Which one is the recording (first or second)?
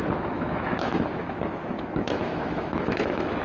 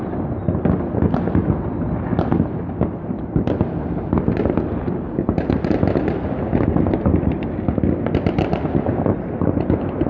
second